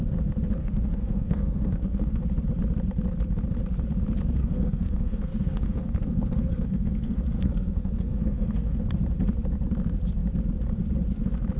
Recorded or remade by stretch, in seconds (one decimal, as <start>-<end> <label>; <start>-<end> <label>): 0.0-0.6 recorded; 0.6-2.2 remade; 2.2-4.4 recorded; 4.4-8.8 remade; 8.8-11.6 recorded